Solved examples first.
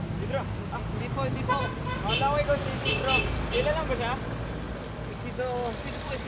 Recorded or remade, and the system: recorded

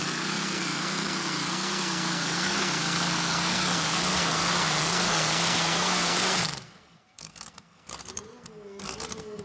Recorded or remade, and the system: remade, codec, SNAC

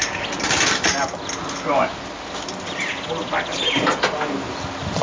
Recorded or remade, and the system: recorded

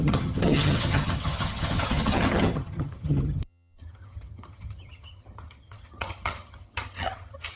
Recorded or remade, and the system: remade, vocoder, HiFi-GAN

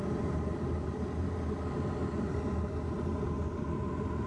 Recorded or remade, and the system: recorded